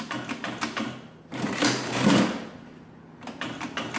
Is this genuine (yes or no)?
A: yes